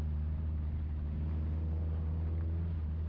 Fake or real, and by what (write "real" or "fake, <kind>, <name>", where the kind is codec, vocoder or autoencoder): real